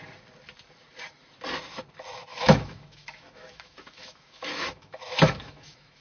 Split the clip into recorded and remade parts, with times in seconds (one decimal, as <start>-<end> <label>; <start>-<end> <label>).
0.0-2.3 recorded; 2.3-6.0 remade